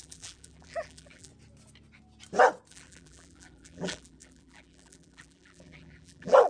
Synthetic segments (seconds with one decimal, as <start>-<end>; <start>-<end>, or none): 0.0-1.3; 2.7-6.5